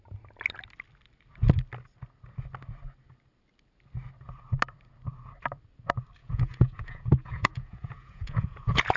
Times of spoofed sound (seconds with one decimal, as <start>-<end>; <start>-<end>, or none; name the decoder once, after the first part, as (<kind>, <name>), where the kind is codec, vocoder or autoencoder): 6.2-9.0 (vocoder, Vocos)